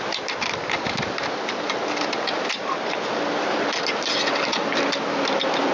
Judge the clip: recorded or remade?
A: recorded